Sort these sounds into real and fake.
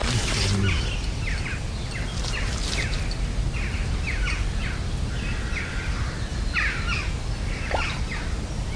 real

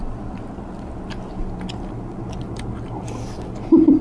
real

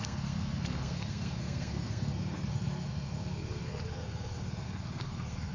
fake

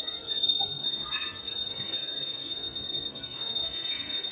fake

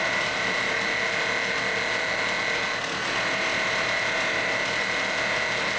real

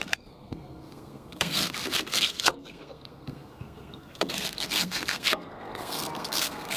fake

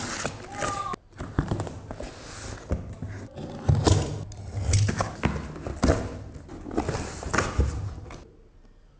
real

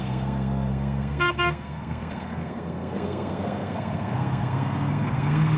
fake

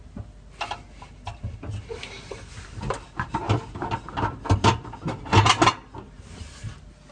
real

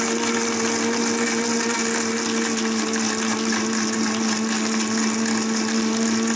real